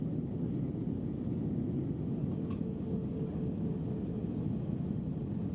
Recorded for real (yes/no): yes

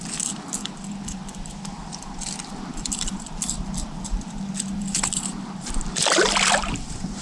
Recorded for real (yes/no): no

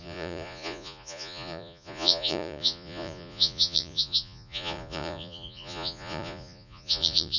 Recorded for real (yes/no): no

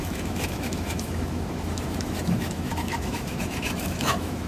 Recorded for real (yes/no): no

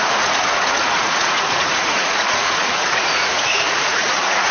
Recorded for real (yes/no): no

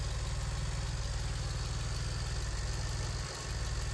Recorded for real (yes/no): yes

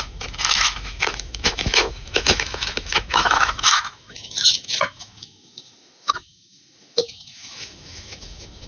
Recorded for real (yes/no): no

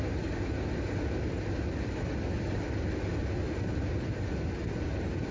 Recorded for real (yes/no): yes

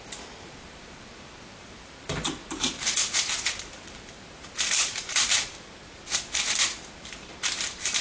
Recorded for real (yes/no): no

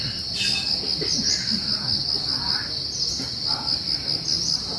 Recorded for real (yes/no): yes